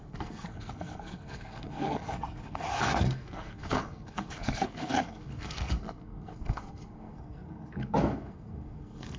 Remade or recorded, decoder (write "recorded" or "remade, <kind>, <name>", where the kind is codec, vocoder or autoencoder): remade, codec, SNAC